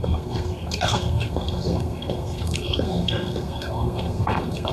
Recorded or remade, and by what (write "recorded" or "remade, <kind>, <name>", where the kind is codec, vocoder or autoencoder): remade, codec, SNAC